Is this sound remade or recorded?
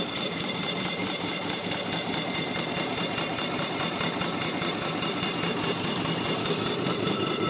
remade